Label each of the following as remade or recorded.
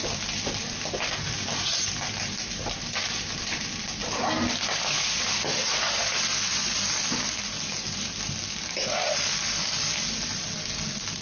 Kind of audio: recorded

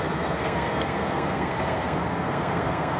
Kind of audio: remade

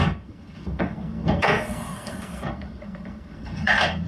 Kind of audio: remade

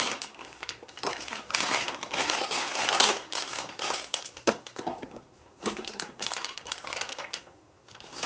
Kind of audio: remade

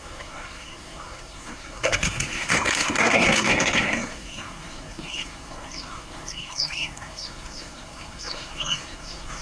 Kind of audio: remade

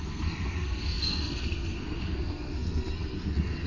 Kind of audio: remade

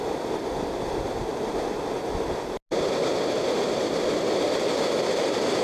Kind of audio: recorded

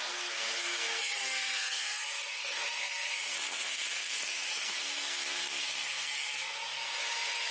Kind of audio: remade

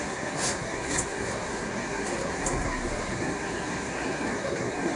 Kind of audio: remade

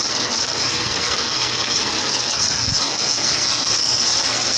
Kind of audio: remade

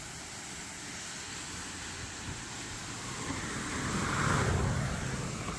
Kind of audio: recorded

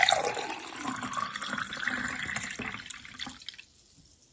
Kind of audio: recorded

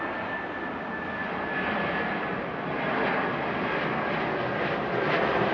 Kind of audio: recorded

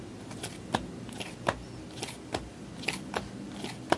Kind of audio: recorded